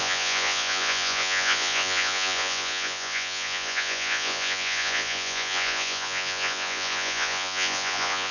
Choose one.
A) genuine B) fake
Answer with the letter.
B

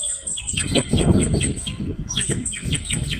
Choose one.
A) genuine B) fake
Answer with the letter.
B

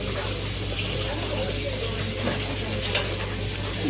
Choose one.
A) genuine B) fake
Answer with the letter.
A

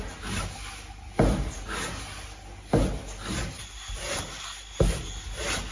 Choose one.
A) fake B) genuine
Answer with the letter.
B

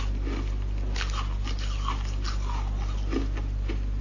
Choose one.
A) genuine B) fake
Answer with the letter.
A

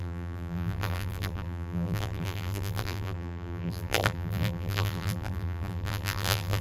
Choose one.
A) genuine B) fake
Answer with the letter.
B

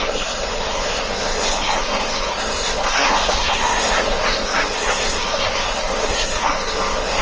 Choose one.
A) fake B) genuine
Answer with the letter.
A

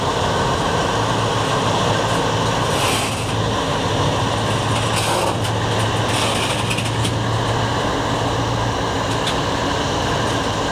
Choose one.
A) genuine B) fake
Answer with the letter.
A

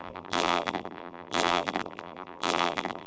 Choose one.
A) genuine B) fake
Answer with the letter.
B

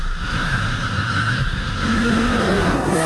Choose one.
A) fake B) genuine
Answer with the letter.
A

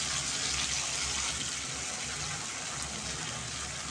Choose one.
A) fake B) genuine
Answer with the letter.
B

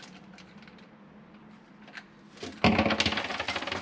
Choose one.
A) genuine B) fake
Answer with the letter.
A